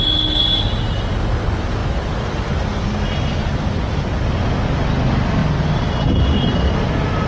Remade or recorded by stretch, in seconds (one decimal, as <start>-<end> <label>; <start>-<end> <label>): 0.0-7.3 recorded